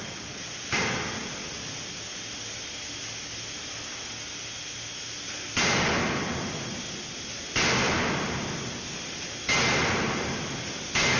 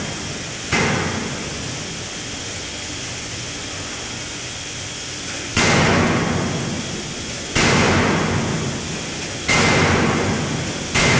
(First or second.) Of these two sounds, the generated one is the second